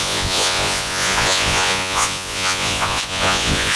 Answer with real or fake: fake